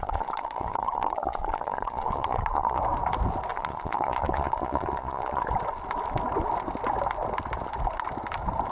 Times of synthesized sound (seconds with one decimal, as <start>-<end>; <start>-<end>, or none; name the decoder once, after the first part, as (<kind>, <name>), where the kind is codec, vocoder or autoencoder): 0.0-2.8 (vocoder, Vocos); 3.5-5.4